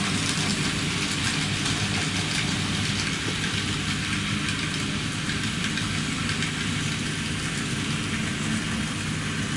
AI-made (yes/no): no